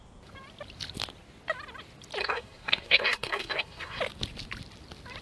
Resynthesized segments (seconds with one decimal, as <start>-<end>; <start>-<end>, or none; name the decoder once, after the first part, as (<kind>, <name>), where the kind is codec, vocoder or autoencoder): 2.2-4.0 (codec, SNAC)

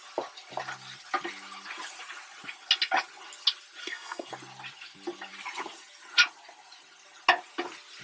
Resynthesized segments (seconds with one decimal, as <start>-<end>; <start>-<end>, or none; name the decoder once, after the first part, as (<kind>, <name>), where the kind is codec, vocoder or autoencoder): 3.8-4.3 (codec, SNAC)

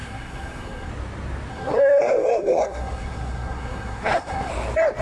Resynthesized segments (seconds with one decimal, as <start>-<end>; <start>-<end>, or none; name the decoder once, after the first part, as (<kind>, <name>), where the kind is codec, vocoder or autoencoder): 0.0-0.9 (codec, SNAC); 1.5-4.5

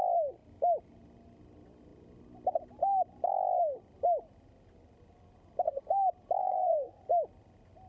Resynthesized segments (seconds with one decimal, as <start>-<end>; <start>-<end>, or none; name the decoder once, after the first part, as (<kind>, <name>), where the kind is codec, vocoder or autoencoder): 6.4-7.0 (codec, SNAC)

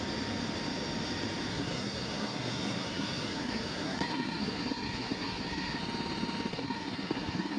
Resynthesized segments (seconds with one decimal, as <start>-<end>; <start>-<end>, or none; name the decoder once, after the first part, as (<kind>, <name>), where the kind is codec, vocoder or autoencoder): 1.5-5.8 (codec, SNAC); 6.5-7.6